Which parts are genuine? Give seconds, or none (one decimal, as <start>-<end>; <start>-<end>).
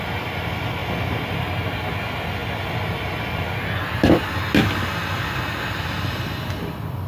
0.0-7.1